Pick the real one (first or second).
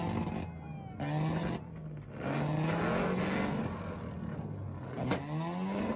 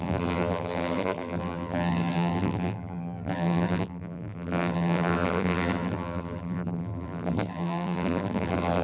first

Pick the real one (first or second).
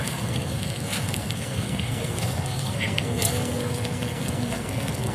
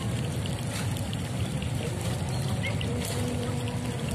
second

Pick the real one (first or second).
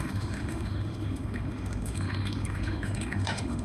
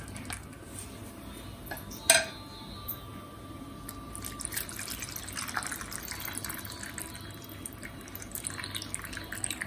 second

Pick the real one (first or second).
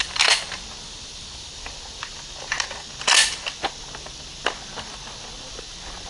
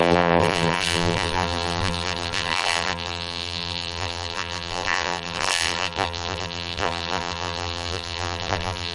first